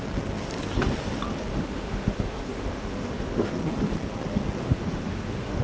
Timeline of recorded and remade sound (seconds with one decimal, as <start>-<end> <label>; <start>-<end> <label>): 0.0-1.5 recorded; 1.5-3.5 remade; 3.5-4.6 recorded; 4.6-5.6 remade